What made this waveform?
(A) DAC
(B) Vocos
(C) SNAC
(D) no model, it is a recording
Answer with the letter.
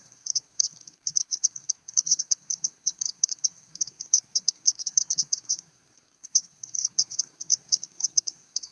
C